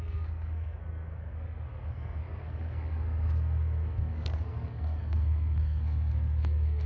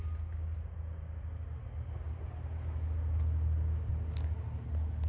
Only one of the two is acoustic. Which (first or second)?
second